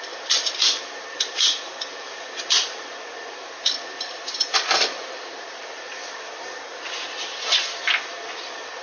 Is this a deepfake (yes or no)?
no